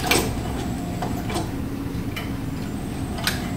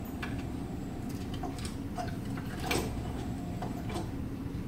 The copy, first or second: second